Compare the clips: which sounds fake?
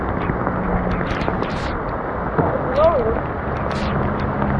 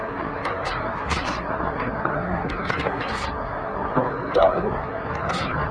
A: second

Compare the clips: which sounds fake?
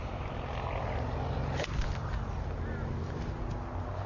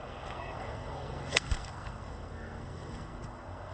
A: second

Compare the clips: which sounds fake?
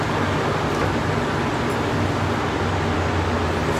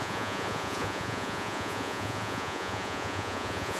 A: second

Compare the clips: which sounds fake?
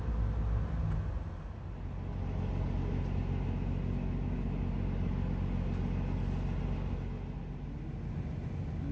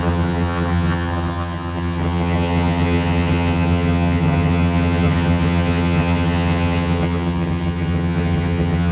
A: second